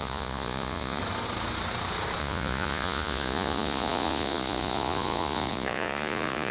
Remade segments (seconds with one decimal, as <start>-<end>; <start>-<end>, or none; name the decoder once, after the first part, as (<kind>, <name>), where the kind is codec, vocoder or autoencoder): 0.0-1.0 (vocoder, Vocos); 2.2-6.5

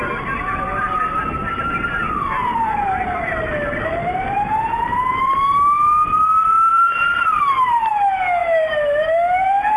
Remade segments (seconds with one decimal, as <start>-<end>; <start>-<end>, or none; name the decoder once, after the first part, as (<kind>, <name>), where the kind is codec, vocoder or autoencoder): 6.7-7.9 (vocoder, BigVGAN v2); 8.4-9.8

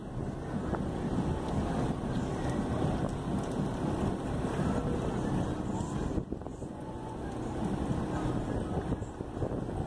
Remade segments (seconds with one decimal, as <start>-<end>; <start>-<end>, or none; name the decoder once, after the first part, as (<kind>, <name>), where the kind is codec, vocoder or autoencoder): 6.5-7.2 (vocoder, Vocos)

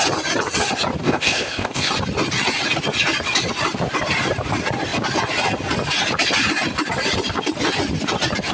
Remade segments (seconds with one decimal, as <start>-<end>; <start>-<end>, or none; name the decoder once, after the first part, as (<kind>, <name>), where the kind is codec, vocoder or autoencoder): 1.0-1.9 (codec, ZipCodec)

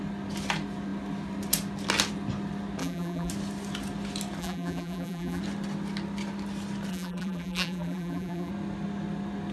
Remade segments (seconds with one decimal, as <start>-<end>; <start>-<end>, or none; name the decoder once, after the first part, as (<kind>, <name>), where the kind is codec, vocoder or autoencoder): 2.8-3.3 (vocoder, BigVGAN v2); 4.4-5.4; 6.9-8.5

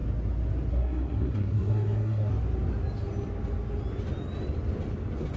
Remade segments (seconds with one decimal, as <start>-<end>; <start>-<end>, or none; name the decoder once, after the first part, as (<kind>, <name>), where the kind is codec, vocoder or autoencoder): 0.7-2.3 (codec, SNAC)